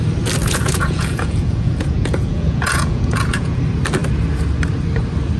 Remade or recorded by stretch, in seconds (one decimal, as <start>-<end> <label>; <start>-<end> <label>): 0.0-0.4 recorded; 0.4-3.6 remade; 3.6-5.4 recorded